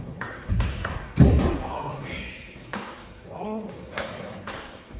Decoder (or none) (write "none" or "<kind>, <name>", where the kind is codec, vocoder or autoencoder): codec, SNAC